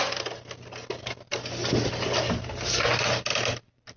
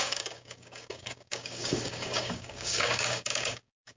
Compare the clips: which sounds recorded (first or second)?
first